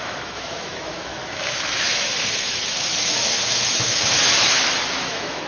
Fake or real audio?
fake